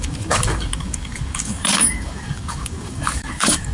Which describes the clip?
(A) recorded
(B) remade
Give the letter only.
B